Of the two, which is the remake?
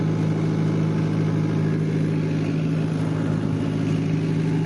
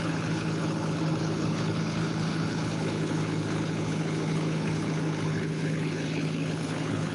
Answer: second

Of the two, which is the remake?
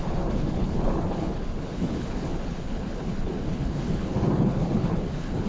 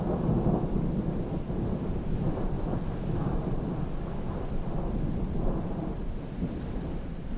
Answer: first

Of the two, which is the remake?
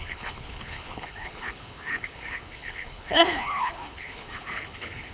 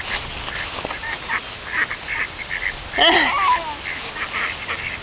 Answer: first